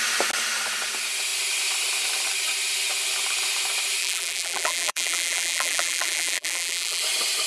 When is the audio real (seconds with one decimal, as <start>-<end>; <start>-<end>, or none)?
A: 0.0-4.0; 7.0-7.5